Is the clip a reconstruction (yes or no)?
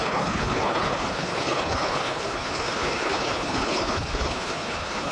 yes